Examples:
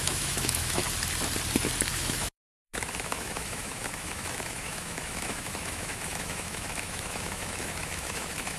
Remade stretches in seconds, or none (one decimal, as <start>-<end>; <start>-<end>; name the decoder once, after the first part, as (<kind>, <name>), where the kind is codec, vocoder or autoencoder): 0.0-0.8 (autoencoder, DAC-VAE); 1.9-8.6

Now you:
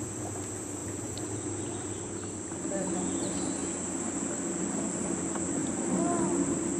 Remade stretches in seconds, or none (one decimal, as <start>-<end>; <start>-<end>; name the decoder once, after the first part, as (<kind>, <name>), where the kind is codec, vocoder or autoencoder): 0.8-1.6 (vocoder, BigVGAN v2)

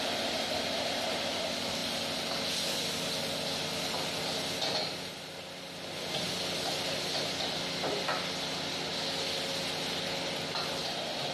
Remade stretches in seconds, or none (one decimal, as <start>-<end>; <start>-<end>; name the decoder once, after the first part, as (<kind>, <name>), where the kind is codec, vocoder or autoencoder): none

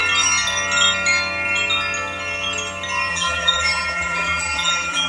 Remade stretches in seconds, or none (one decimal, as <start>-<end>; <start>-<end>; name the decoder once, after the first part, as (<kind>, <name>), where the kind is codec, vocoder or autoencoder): 3.1-5.1 (vocoder, BigVGAN v2)

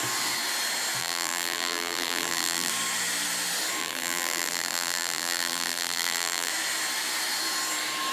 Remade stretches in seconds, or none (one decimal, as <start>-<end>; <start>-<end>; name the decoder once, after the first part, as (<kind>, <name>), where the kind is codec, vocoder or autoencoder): 1.0-2.7 (vocoder, BigVGAN v2); 3.8-6.5

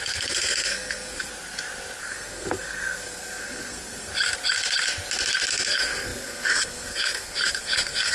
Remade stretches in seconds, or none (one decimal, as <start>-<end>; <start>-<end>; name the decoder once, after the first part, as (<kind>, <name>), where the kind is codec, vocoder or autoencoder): 0.0-1.3 (codec, SNAC); 2.0-4.1; 5.5-8.1